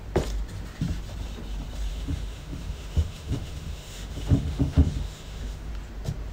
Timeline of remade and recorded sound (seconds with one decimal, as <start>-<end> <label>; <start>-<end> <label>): 0.0-1.9 recorded; 1.9-5.7 remade; 5.7-6.3 recorded